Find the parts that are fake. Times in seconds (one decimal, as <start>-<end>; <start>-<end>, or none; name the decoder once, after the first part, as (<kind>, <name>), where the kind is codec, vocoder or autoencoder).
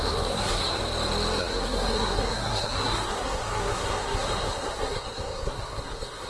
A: 0.0-0.8 (codec, SNAC); 1.4-6.3